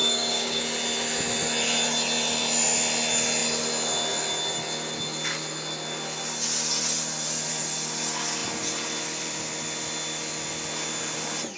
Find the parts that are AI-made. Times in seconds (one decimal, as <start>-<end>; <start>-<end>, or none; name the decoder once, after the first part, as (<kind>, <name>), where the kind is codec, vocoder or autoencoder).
0.0-0.6 (codec, DAC)